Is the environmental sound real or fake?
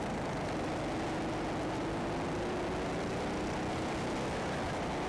real